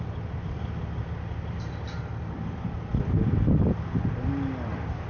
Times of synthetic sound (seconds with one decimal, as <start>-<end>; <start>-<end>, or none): none